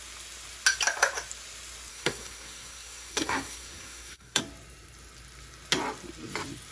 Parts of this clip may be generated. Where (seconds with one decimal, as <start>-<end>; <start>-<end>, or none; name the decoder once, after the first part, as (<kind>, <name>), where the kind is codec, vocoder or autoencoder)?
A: 1.9-4.4 (codec, SNAC)